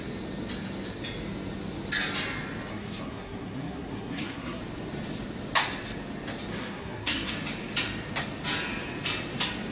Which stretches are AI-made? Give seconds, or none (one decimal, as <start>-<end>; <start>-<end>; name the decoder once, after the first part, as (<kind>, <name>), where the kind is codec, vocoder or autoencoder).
2.7-4.6 (codec, SNAC); 6.5-7.3